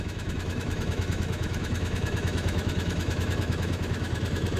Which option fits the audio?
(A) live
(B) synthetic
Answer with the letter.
B